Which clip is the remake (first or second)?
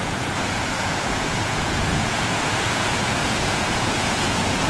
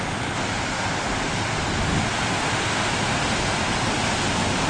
first